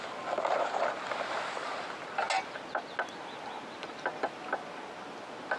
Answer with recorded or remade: recorded